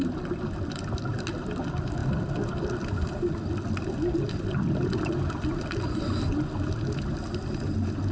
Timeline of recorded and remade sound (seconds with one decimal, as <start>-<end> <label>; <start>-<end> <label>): 0.0-8.1 recorded